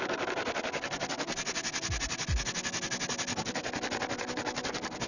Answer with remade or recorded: recorded